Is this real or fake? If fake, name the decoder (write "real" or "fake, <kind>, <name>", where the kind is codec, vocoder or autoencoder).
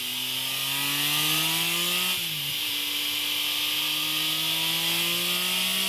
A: real